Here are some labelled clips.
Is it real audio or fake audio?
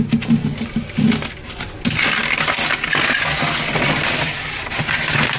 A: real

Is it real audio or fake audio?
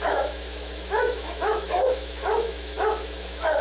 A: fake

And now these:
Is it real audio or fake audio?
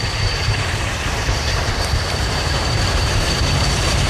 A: fake